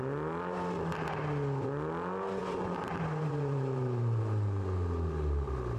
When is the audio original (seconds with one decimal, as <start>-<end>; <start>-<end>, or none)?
0.0-2.4; 4.2-5.8